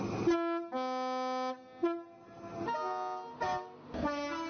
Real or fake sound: real